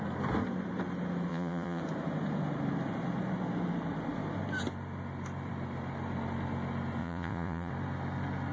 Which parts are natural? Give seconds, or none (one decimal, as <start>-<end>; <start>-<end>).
0.0-1.3; 1.8-7.0; 7.7-8.5